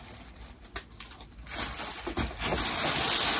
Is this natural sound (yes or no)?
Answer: yes